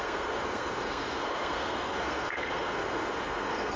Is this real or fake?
fake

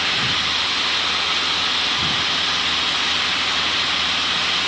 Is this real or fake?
real